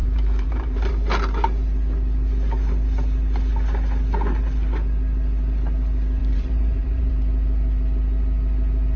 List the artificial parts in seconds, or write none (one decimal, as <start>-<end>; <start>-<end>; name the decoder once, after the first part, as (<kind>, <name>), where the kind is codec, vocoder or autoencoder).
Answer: 0.0-0.9 (vocoder, BigVGAN v2); 6.2-7.1